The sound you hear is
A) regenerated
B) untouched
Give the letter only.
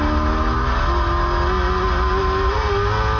B